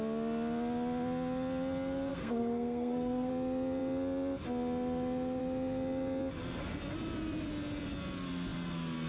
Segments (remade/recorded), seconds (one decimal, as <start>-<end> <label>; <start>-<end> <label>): 0.0-2.1 recorded; 2.1-3.3 remade; 3.3-9.1 recorded